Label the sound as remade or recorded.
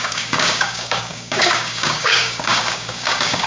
remade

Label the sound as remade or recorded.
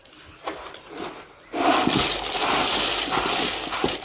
recorded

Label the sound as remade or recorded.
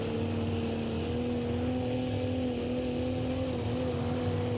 recorded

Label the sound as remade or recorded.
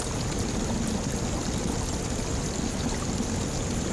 recorded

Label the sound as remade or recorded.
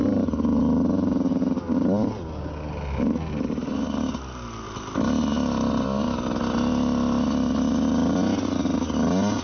recorded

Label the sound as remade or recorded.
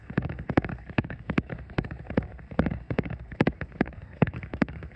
remade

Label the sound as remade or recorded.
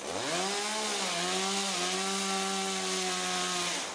recorded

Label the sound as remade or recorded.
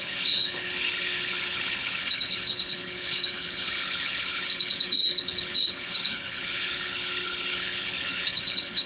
remade